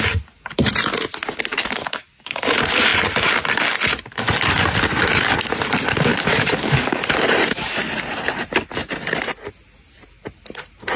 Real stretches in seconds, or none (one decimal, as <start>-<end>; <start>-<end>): 0.0-1.5; 2.5-6.1; 7.0-11.0

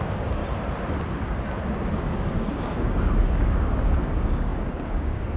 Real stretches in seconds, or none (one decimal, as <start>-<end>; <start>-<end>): 0.4-1.9

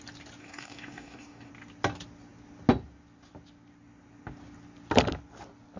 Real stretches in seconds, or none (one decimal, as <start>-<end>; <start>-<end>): 0.0-0.4; 1.5-5.8